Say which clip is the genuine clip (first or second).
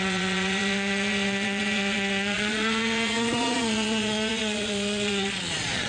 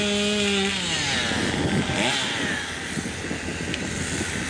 second